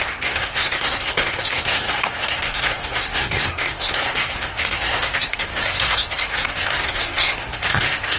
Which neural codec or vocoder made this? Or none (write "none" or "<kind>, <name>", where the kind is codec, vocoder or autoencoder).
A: codec, SNAC